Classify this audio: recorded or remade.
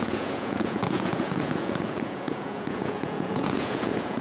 remade